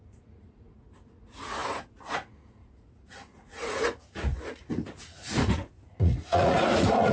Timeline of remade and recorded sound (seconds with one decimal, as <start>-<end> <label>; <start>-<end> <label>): 0.0-7.1 remade